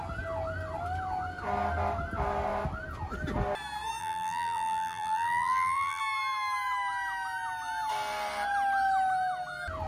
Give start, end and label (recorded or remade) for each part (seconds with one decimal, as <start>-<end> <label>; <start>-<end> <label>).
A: 0.0-4.0 recorded; 4.0-6.0 remade; 6.0-9.9 recorded